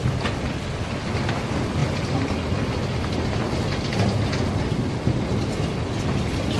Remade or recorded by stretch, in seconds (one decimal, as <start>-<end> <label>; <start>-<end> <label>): 0.0-6.6 recorded